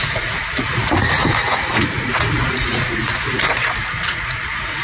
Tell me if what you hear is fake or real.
fake